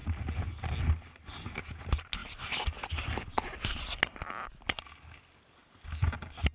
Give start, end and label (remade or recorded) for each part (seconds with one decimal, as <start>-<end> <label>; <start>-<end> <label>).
0.0-6.5 recorded

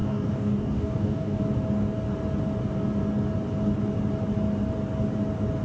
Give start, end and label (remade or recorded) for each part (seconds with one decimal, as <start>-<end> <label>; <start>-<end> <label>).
0.0-1.4 remade; 1.4-5.6 recorded